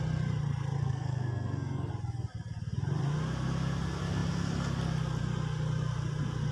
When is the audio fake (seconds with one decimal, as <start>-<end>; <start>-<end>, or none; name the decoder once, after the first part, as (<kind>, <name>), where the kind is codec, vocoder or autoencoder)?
0.8-1.9 (codec, SNAC)